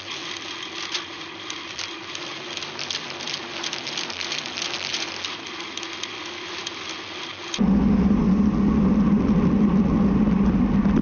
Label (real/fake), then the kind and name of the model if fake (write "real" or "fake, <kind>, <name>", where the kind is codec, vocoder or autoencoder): real